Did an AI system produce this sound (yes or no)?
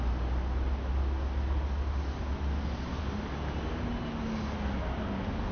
no